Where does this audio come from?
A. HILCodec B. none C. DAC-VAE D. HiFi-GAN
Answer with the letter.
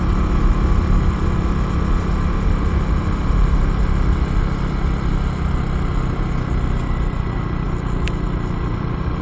B